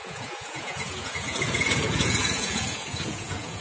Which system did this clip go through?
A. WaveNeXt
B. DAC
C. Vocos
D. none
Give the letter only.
C